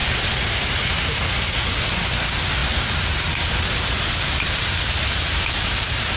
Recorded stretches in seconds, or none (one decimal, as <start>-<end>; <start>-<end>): 0.7-2.6